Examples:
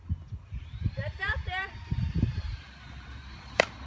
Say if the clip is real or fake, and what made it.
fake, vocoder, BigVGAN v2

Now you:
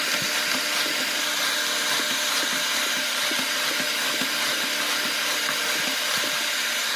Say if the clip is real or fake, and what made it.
real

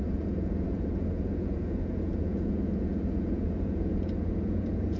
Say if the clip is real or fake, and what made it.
fake, vocoder, Vocos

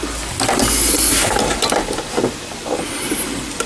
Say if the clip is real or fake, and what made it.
real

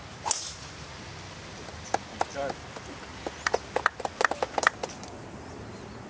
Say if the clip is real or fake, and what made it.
real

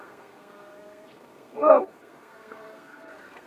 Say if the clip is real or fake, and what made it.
fake, codec, SNAC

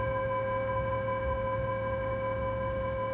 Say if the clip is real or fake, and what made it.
fake, autoencoder, DAC-VAE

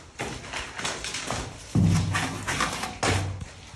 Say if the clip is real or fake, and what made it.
real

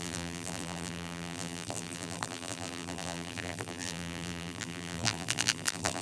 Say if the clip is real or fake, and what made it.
fake, vocoder, BigVGAN v2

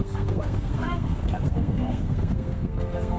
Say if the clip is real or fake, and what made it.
fake, codec, SNAC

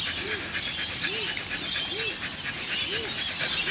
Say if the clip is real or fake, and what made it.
real